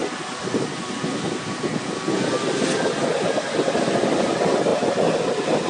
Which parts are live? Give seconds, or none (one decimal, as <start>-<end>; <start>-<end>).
0.0-3.1; 4.7-5.7